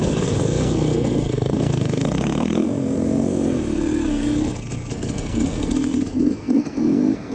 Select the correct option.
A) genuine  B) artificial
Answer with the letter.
B